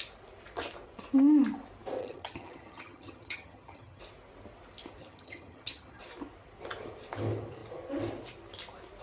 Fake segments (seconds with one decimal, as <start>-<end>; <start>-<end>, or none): 2.0-4.0; 5.0-6.0